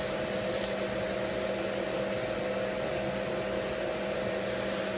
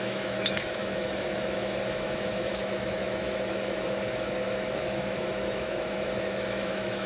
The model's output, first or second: second